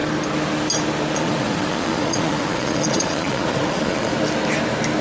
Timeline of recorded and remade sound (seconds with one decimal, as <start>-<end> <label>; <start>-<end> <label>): 0.0-1.1 recorded; 1.1-4.1 remade; 4.1-5.0 recorded